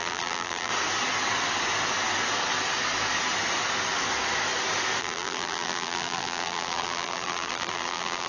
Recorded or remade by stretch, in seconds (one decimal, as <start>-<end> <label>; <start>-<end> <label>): 0.0-0.7 remade; 0.7-5.0 recorded; 5.0-8.3 remade